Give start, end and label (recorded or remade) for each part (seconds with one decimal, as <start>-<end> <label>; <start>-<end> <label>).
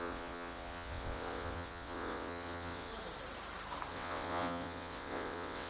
0.0-2.9 remade; 2.9-3.9 recorded; 3.9-5.7 remade